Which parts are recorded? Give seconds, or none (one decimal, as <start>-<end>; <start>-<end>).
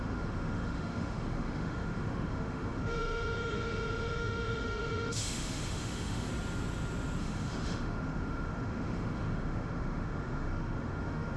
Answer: 6.3-7.2